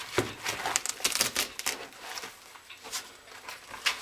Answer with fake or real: real